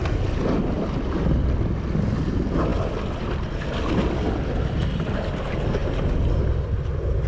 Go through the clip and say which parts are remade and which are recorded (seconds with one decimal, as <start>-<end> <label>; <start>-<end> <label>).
0.0-7.3 recorded